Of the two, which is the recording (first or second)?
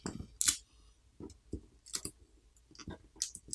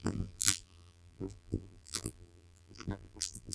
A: first